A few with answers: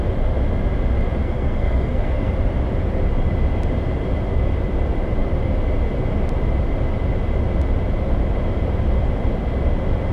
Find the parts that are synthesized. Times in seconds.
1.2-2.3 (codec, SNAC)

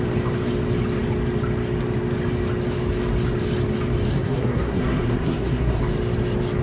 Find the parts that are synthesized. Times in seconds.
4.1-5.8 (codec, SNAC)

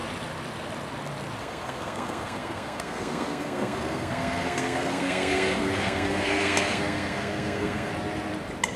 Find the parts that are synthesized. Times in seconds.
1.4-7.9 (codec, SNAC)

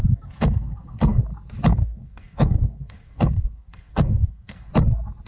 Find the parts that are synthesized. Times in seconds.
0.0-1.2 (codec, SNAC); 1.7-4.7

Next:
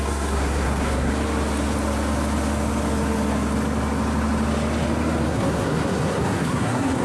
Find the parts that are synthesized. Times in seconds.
0.0-1.1 (codec, SNAC); 5.3-7.0

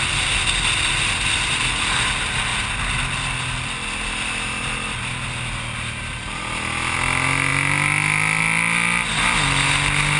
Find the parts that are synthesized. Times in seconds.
none

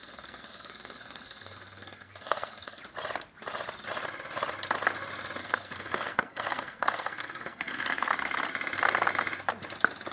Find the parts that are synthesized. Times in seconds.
0.0-2.8 (codec, SNAC); 5.4-8.1

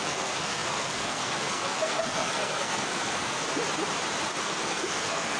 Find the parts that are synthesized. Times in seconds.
0.0-3.4 (codec, SNAC); 4.4-5.4